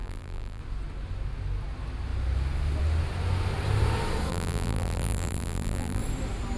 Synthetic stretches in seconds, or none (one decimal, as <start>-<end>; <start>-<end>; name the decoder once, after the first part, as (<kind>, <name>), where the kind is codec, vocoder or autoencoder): 0.0-0.6 (vocoder, BigVGAN v2); 4.3-6.0

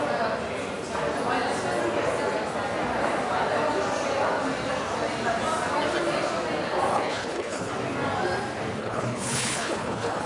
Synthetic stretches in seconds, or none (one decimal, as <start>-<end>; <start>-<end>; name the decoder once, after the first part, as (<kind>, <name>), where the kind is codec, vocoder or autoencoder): 6.9-7.7 (codec, HILCodec); 8.8-10.3

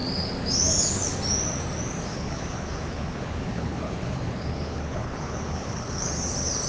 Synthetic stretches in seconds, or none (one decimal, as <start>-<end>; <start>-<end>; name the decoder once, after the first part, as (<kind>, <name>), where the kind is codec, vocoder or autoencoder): 2.1-6.1 (codec, HILCodec)

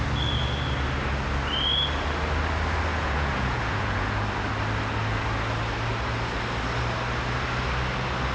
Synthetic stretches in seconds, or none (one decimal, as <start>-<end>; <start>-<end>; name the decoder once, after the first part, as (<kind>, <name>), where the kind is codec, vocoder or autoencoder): 2.9-4.1 (vocoder, Vocos)

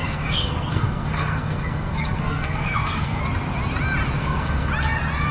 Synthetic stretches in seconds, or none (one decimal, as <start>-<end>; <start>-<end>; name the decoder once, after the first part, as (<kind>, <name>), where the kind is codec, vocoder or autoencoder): 0.0-3.2 (codec, SNAC); 4.2-4.7

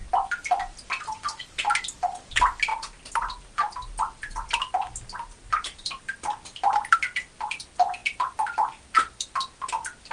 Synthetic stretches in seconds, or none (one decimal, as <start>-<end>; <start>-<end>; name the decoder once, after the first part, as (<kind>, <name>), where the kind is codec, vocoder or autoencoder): none